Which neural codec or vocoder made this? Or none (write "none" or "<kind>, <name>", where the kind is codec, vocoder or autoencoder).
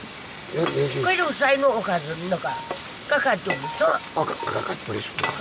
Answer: none